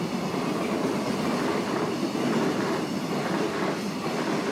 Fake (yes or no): no